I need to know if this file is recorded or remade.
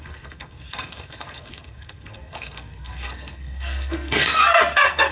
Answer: remade